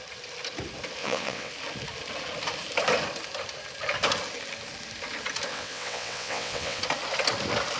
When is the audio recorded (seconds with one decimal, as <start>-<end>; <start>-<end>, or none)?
0.0-1.0; 1.5-5.5; 6.8-7.8